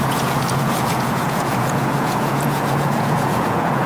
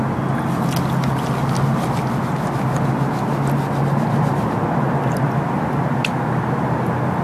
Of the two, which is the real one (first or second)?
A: second